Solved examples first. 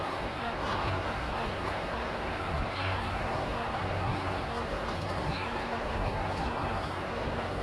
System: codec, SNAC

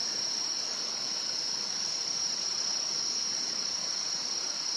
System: none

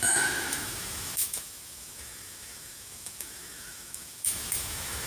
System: autoencoder, DAC-VAE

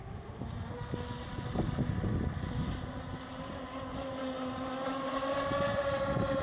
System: none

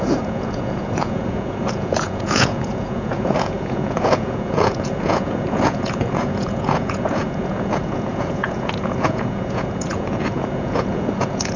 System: vocoder, Vocos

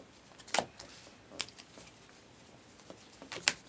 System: vocoder, BigVGAN v2